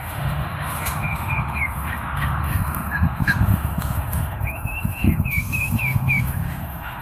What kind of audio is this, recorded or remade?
remade